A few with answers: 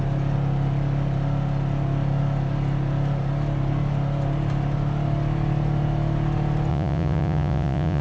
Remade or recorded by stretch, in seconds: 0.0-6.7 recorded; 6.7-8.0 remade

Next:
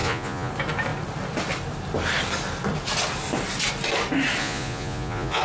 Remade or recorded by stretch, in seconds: 0.0-0.5 remade; 0.5-4.4 recorded; 4.4-5.4 remade

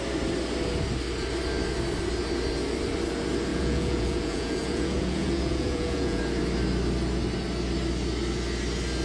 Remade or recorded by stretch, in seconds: 0.0-3.5 recorded; 3.5-6.2 remade; 6.2-9.0 recorded

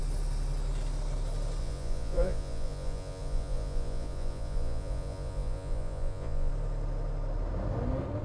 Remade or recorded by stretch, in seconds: 0.0-1.6 recorded; 1.6-6.5 remade; 6.5-8.2 recorded

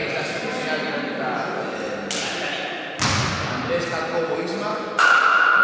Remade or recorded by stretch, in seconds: 0.0-4.7 recorded; 4.7-5.6 remade

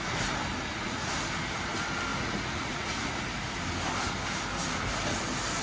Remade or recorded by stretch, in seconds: 0.0-0.6 recorded; 0.6-1.1 remade; 1.1-2.1 recorded; 2.1-3.2 remade; 3.2-5.6 recorded

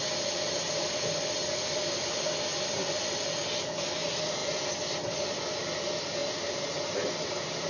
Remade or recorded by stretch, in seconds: 0.0-7.7 recorded

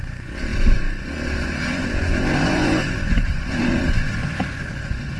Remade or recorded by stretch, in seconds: 0.0-5.2 remade